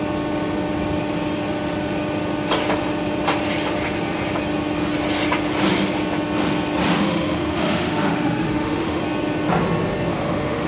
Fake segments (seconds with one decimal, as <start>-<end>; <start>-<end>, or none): 7.0-9.0; 10.1-10.7